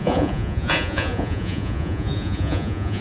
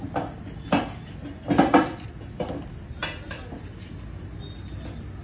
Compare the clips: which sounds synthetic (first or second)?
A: first